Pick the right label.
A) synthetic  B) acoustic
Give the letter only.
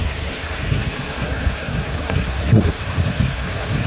A